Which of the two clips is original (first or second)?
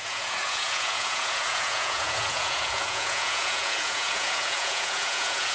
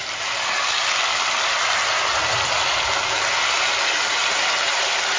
second